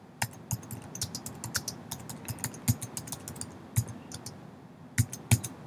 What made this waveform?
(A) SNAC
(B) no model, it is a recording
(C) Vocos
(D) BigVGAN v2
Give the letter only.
B